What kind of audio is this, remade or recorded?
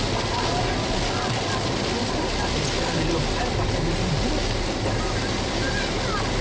recorded